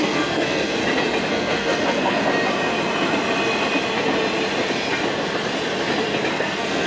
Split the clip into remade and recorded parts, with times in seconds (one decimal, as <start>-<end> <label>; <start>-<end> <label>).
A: 0.0-0.8 remade; 0.8-1.3 recorded; 1.3-2.2 remade; 2.2-6.3 recorded; 6.3-6.9 remade